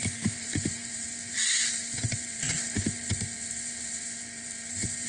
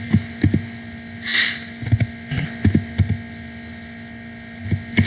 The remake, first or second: first